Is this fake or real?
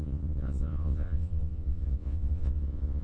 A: fake